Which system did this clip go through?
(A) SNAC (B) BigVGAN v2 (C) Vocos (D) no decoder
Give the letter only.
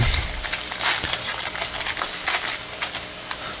D